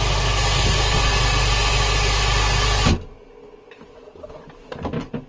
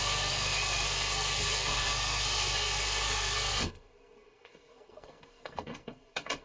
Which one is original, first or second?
first